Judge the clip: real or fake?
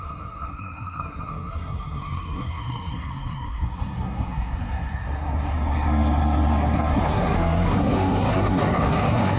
fake